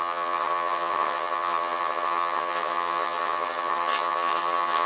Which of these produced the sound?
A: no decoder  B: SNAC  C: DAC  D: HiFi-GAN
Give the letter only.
D